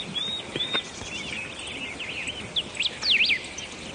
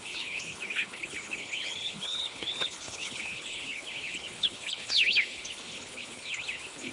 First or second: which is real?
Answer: first